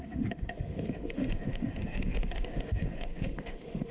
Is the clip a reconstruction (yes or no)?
yes